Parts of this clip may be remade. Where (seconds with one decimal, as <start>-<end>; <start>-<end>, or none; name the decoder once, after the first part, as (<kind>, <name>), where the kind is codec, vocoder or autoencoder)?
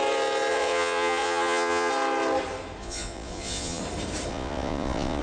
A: 0.5-1.9 (vocoder, Vocos); 2.8-3.8; 4.3-5.2